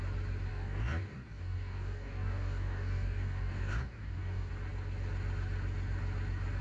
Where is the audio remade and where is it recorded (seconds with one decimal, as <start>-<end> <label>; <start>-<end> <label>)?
0.0-0.5 recorded; 0.5-4.5 remade; 4.5-6.6 recorded